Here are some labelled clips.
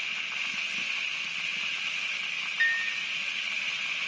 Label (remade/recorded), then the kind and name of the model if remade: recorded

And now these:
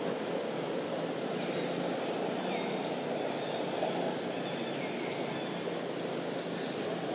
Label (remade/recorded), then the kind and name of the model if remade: recorded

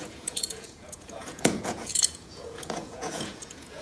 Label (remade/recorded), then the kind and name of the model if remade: remade, vocoder, Vocos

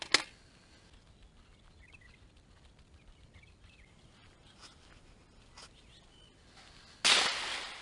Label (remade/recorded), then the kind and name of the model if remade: recorded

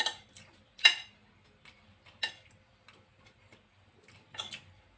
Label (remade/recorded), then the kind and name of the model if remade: recorded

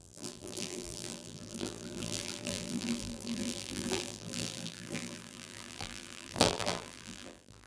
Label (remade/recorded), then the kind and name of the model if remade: remade, vocoder, BigVGAN v2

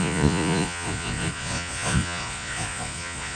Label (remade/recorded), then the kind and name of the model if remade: remade, vocoder, Vocos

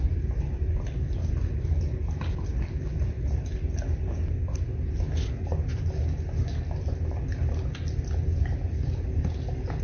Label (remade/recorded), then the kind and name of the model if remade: recorded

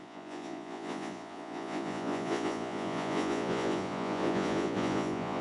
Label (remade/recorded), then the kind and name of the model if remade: remade, vocoder, Vocos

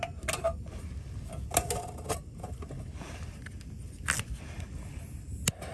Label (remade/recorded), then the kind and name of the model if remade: recorded